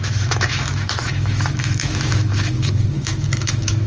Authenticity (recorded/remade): remade